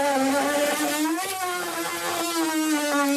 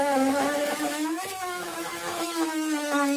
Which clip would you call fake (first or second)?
second